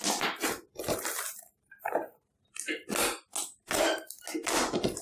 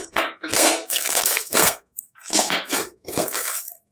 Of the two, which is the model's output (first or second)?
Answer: second